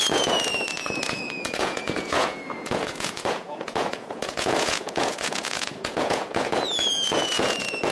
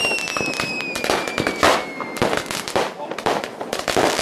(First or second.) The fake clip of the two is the first